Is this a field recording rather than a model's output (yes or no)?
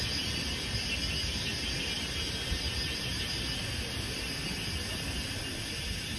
yes